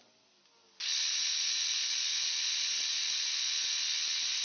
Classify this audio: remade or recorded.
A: recorded